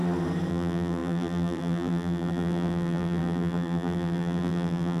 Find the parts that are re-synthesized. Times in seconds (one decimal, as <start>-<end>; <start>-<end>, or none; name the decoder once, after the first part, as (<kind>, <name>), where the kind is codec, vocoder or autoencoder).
0.5-5.0 (vocoder, BigVGAN v2)